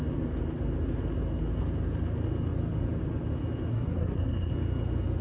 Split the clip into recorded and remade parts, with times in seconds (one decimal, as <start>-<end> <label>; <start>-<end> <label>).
0.0-3.7 recorded; 3.7-4.5 remade; 4.5-5.2 recorded